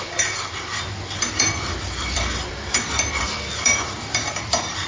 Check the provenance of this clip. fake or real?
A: fake